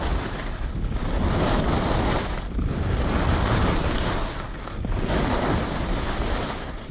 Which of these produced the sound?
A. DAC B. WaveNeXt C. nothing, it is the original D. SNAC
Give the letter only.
C